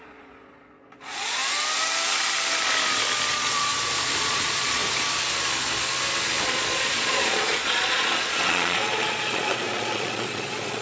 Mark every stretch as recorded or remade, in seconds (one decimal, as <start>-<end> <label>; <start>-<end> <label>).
0.0-1.4 remade; 1.4-3.3 recorded; 3.3-3.7 remade; 3.7-4.2 recorded; 4.2-4.8 remade; 4.8-6.4 recorded; 6.4-10.8 remade